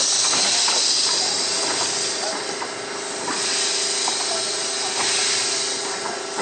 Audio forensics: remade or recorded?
recorded